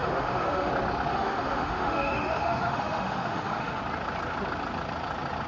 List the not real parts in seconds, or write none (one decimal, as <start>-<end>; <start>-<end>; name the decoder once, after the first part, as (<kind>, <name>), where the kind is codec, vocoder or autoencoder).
0.0-0.7 (autoencoder, DAC-VAE); 1.1-3.8